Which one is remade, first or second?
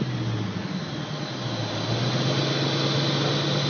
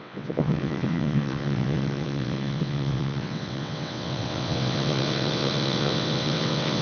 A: second